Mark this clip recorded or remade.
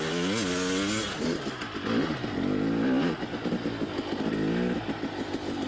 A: recorded